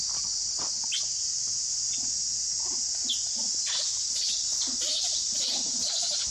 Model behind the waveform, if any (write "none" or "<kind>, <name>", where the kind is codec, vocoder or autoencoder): none